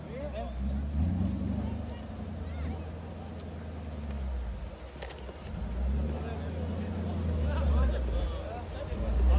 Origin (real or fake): real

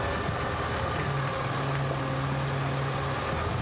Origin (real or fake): real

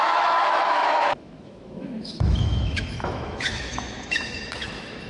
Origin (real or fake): fake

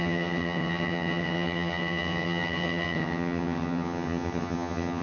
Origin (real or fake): fake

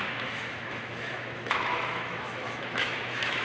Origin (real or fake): fake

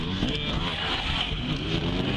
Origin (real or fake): real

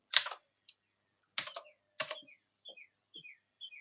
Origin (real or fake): real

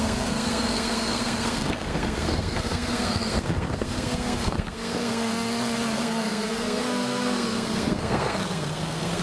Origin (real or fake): fake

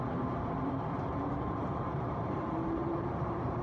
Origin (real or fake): fake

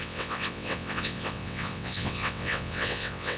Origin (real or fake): fake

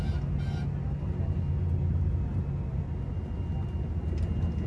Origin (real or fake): real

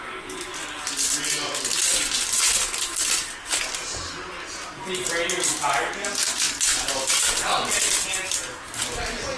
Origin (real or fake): real